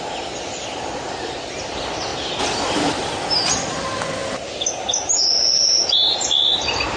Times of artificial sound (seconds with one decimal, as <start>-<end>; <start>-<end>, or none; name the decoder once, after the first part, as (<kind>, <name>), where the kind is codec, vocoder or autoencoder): none